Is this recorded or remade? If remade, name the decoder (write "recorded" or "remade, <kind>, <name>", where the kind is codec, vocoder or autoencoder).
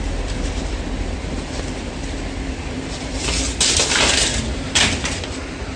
recorded